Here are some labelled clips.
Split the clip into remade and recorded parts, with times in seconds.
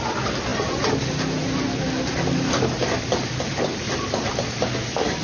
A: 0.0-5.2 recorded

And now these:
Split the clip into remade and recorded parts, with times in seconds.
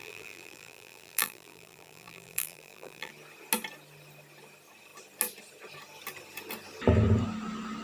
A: 0.0-3.1 remade; 3.1-7.8 recorded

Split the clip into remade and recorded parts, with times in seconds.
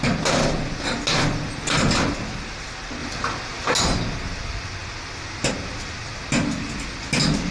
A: 0.0-7.5 recorded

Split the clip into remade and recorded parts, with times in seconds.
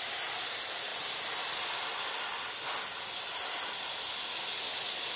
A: 0.0-5.2 recorded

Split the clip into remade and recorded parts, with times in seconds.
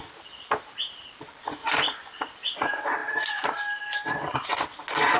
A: 0.0-1.6 recorded; 1.6-2.1 remade; 2.1-5.2 recorded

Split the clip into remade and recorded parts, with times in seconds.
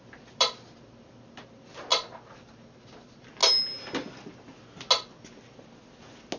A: 0.0-6.4 recorded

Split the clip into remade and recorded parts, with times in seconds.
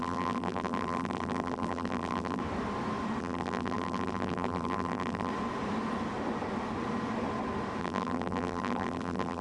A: 0.0-2.4 remade; 2.4-3.2 recorded; 3.2-5.3 remade; 5.3-7.8 recorded; 7.8-9.4 remade